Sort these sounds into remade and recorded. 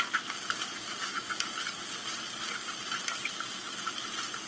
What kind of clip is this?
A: recorded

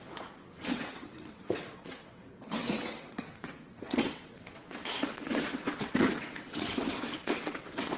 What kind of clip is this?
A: remade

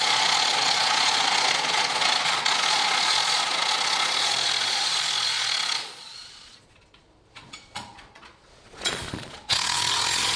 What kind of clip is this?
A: remade